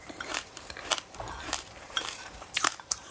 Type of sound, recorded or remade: remade